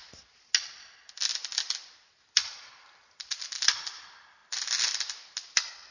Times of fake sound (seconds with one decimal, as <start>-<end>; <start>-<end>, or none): none